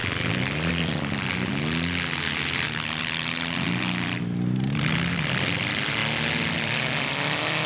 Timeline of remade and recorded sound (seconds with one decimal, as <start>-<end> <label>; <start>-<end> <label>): 0.0-1.5 remade; 1.5-3.0 recorded; 3.0-6.0 remade; 6.0-6.6 recorded; 6.6-7.7 remade